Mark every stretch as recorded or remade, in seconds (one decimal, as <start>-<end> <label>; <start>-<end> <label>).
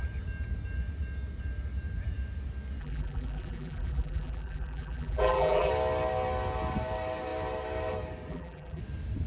0.0-2.8 recorded; 2.8-5.7 remade; 5.7-8.3 recorded; 8.3-8.8 remade; 8.8-9.3 recorded